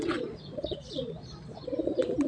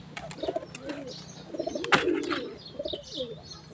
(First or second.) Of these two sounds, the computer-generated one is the first